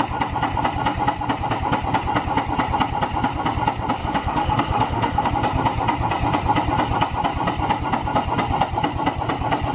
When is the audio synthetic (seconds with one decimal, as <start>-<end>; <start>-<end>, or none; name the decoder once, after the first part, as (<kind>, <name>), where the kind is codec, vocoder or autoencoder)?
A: 4.0-5.3 (autoencoder, DAC-VAE)